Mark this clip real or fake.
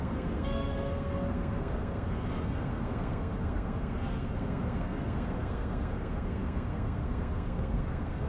fake